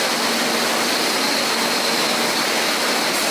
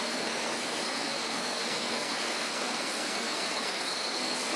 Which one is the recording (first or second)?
first